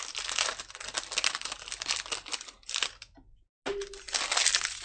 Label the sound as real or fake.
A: real